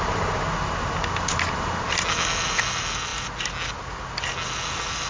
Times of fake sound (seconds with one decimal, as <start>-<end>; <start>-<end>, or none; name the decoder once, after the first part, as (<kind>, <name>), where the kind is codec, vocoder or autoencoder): none